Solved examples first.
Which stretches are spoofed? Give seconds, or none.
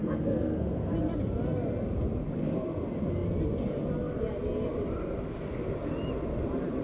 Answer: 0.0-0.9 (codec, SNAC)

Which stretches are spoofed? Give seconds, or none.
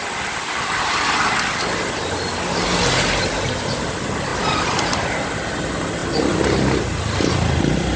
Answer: none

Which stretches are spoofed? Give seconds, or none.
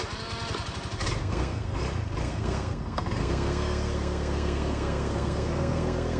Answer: 1.2-1.8 (codec, SNAC); 2.2-6.2